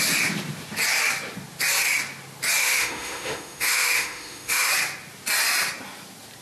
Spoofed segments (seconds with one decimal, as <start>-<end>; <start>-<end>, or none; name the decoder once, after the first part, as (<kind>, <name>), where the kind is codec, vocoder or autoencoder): 2.6-4.7 (autoencoder, DAC-VAE)